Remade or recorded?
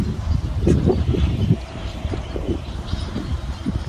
recorded